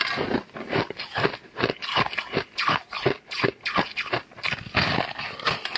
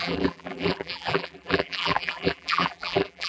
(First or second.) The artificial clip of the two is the second